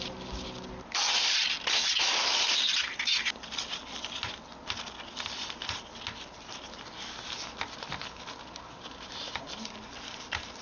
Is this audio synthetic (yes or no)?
no